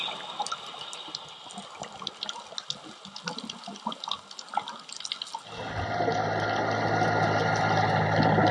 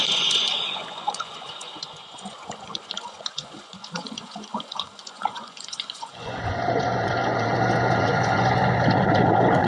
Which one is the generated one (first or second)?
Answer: second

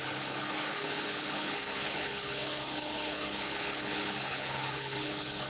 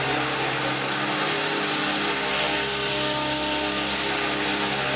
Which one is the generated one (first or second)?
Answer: first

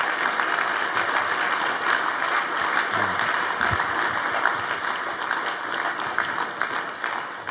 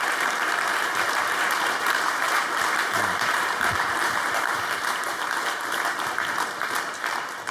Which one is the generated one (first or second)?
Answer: second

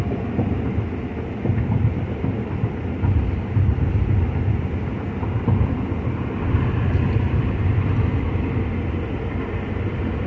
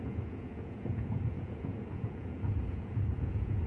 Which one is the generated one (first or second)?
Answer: second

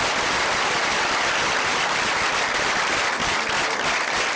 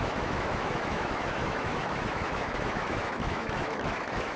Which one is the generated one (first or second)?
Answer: second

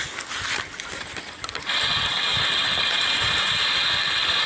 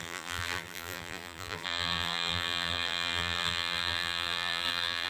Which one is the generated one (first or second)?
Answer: second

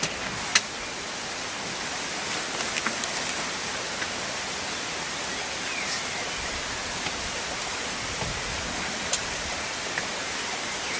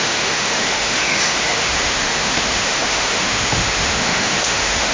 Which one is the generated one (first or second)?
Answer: second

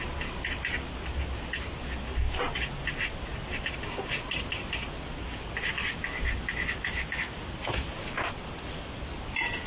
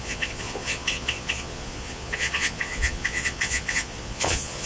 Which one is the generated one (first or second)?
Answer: second